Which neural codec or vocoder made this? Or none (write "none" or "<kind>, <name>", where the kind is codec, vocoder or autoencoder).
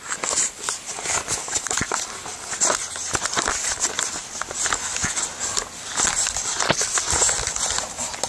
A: none